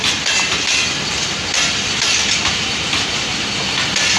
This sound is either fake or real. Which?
real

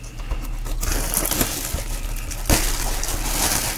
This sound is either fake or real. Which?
real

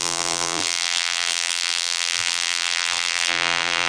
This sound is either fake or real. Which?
fake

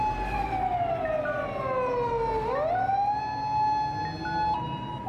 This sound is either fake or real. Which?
real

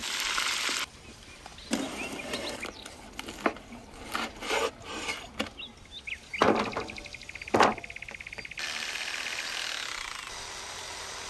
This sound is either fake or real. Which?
real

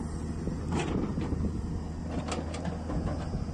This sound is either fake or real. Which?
real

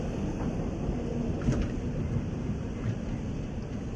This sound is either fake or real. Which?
real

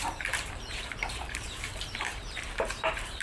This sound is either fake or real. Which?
fake